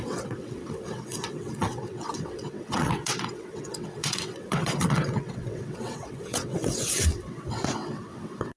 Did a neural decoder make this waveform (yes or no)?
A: yes